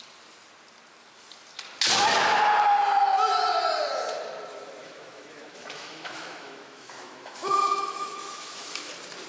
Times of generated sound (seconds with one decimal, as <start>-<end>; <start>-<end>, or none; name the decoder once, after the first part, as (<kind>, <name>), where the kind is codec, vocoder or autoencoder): 4.8-8.9 (autoencoder, DAC-VAE)